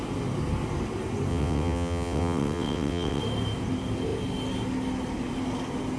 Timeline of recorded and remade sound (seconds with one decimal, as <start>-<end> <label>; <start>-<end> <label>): 0.0-1.3 recorded; 1.3-3.2 remade; 3.2-6.0 recorded